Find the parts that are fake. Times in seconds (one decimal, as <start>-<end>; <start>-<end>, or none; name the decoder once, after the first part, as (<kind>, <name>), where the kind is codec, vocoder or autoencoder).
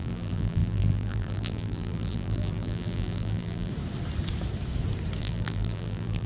0.0-3.7 (vocoder, BigVGAN v2); 5.2-6.3